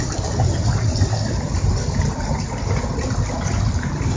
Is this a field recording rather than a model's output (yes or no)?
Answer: yes